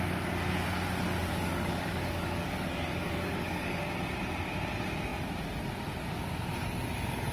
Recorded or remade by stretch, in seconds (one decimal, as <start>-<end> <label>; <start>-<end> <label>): 0.0-1.2 recorded; 1.2-3.8 remade; 3.8-7.3 recorded